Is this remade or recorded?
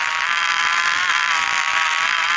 remade